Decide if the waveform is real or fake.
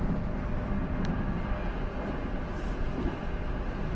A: real